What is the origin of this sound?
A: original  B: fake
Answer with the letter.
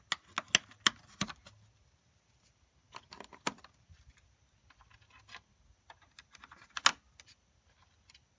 A